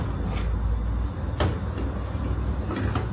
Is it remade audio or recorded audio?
recorded